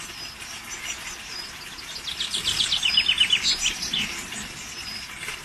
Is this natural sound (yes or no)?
yes